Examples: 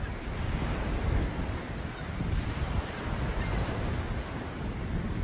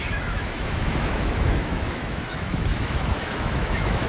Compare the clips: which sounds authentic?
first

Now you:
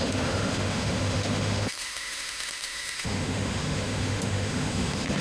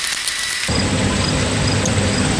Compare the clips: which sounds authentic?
second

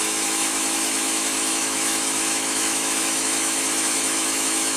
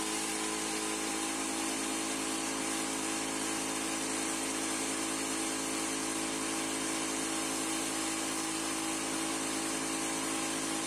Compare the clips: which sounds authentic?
second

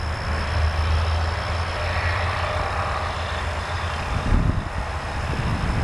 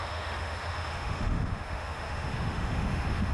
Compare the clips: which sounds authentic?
first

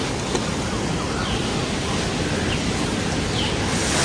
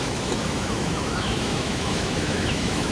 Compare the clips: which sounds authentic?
first